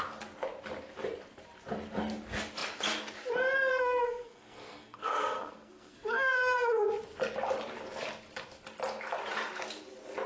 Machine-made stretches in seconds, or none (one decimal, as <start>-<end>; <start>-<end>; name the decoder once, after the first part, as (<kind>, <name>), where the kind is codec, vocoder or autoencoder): 3.7-6.9 (codec, SNAC)